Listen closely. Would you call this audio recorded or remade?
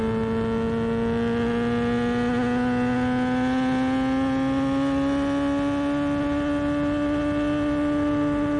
recorded